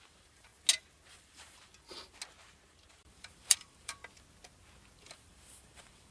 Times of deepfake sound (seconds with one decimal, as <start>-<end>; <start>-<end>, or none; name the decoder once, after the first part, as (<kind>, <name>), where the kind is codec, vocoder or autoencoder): 0.0-0.5 (vocoder, BigVGAN v2); 1.1-1.7; 2.7-4.0; 5.0-6.1